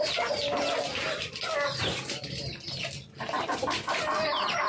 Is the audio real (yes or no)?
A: yes